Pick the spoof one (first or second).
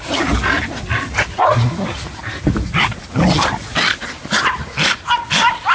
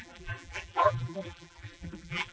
second